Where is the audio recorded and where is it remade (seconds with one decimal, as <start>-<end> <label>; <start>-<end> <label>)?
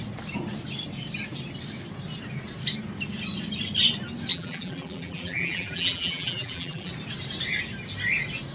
0.0-4.3 recorded; 4.3-6.9 remade; 6.9-8.5 recorded